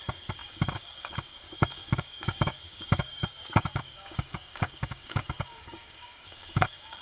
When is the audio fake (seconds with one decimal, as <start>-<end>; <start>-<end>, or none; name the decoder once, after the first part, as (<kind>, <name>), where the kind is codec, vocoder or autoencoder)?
0.0-7.0 (codec, DAC)